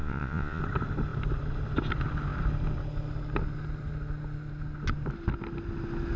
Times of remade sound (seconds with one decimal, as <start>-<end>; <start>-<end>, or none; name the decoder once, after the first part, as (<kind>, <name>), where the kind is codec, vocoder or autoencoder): 0.0-0.6 (vocoder, Vocos)